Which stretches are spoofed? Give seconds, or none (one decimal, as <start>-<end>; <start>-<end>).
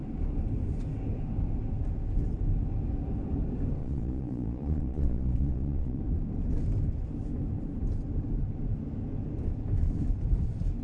3.8-6.0